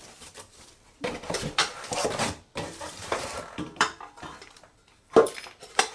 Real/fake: fake